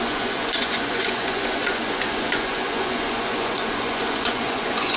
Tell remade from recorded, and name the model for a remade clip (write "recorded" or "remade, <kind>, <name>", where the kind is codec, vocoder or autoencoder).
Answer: remade, vocoder, Vocos